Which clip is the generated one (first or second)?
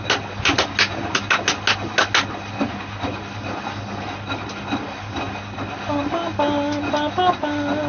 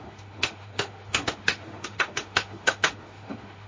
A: second